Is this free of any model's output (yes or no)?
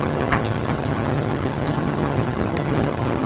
no